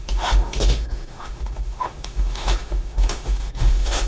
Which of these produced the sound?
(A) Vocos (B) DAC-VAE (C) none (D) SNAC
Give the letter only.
B